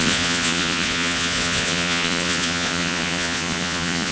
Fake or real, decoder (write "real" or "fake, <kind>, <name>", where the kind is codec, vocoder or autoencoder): fake, vocoder, Vocos